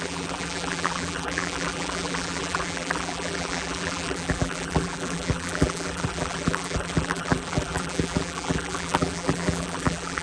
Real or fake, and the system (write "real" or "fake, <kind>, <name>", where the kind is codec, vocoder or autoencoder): fake, vocoder, BigVGAN v2